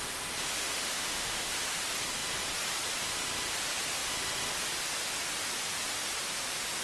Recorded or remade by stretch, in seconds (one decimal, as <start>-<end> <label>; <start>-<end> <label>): 0.0-0.6 recorded; 0.6-1.5 remade; 1.5-6.8 recorded